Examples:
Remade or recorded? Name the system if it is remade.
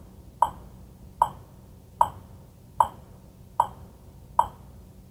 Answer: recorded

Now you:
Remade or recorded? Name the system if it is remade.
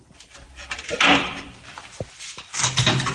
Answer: remade, vocoder, BigVGAN v2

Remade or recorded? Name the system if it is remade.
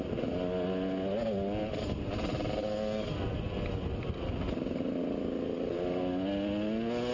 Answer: recorded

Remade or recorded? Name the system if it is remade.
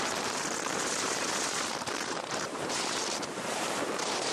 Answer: remade, vocoder, BigVGAN v2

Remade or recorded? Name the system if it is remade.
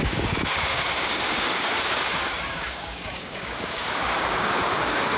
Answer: remade, codec, DAC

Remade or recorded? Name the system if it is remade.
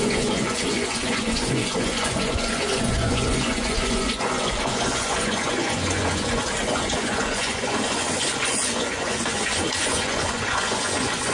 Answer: remade, vocoder, Vocos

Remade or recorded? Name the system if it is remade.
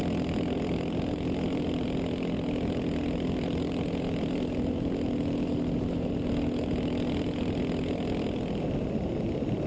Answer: recorded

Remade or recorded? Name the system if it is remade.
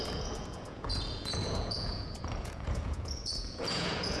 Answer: remade, vocoder, Vocos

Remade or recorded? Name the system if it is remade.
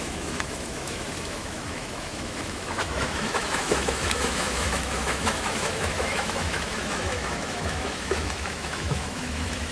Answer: remade, autoencoder, DAC-VAE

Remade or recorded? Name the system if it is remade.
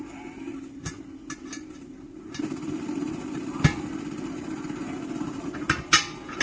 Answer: recorded